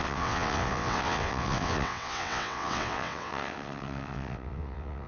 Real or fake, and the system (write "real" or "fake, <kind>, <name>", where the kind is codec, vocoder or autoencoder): fake, vocoder, WaveNeXt